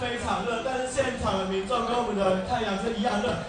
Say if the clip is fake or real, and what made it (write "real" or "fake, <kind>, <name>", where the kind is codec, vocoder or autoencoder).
real